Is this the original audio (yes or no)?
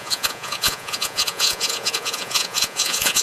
no